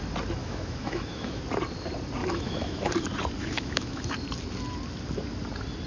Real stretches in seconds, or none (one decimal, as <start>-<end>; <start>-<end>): 0.0-0.4; 1.4-2.2; 2.9-3.4; 4.0-5.9